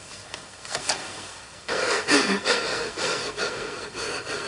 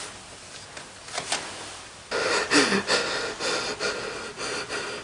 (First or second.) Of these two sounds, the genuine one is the second